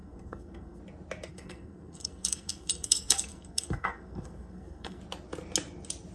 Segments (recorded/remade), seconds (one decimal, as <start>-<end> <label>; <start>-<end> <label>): 0.0-0.8 remade; 0.8-1.3 recorded; 1.3-5.0 remade; 5.0-6.1 recorded